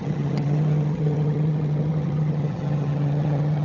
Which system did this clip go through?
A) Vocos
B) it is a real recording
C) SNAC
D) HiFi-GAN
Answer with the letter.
D